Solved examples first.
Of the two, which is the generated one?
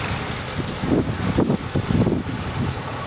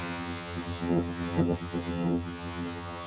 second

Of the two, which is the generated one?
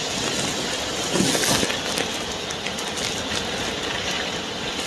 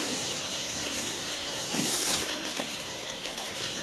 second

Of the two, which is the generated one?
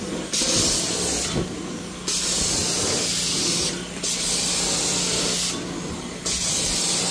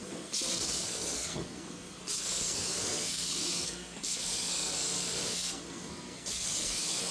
second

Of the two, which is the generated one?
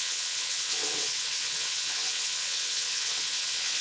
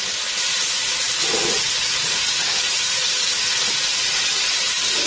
first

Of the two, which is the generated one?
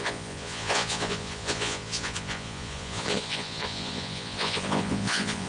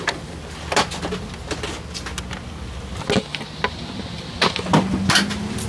first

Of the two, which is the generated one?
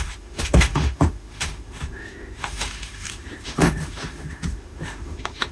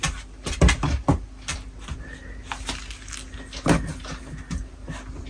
first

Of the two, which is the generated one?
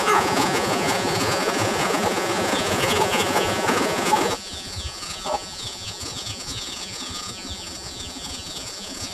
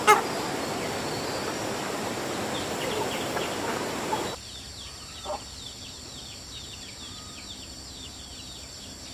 first